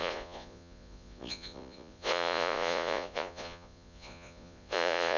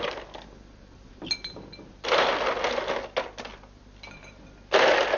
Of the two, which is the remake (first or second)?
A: first